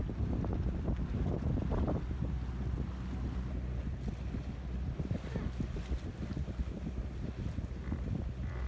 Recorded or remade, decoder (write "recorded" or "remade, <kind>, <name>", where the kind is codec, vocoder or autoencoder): recorded